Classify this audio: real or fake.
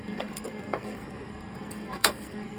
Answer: fake